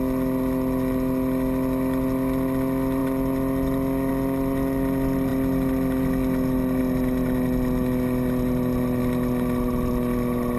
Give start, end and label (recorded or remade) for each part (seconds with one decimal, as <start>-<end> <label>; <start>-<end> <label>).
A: 0.0-10.6 recorded